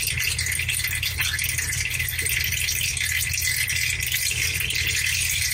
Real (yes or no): yes